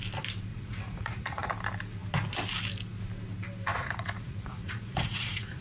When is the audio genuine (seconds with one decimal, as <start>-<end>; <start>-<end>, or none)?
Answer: 0.0-0.5; 1.5-3.7